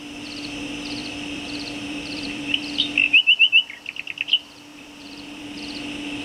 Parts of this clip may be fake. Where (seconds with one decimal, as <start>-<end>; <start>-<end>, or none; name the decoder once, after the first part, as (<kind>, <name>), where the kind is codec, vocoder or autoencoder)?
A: 1.0-2.6 (vocoder, BigVGAN v2); 4.7-5.4